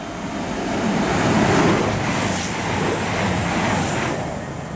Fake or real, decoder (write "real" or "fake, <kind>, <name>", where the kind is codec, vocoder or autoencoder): real